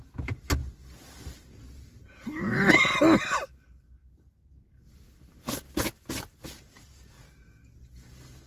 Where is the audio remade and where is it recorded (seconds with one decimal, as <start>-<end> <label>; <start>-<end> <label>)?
0.0-8.5 recorded